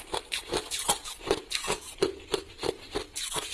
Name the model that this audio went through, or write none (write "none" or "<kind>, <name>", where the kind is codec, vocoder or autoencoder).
none